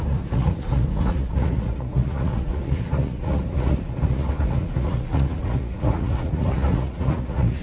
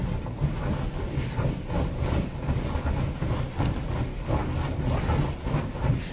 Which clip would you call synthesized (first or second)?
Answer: first